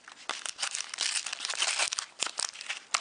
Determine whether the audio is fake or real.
real